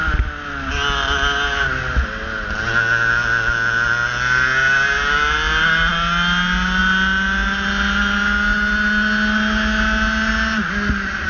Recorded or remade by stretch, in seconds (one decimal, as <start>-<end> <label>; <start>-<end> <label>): 0.0-11.3 recorded